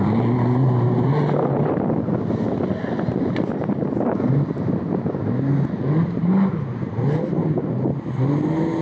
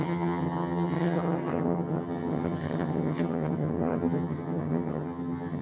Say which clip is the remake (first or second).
second